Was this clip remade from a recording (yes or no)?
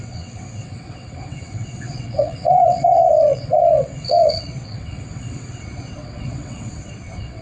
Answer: yes